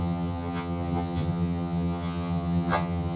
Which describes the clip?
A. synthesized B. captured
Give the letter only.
A